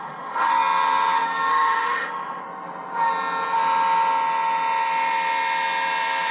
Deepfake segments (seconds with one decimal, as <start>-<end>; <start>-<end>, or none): 0.0-0.5; 1.5-2.4